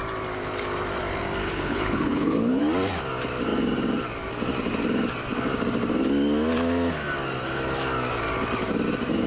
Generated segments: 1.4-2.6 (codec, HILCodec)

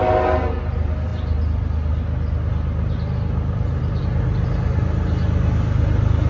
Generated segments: none

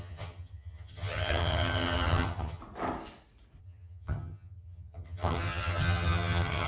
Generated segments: 0.0-2.6 (vocoder, HiFi-GAN); 3.6-6.7

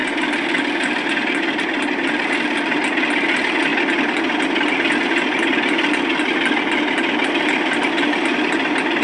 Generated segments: none

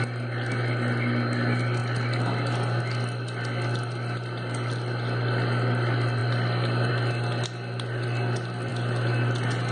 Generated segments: none

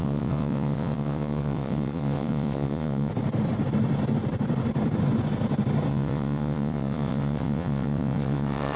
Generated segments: 0.0-3.1 (vocoder, WaveNeXt); 5.9-8.8

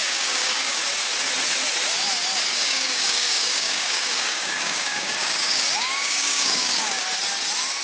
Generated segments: 0.0-0.8 (codec, DAC); 2.5-7.0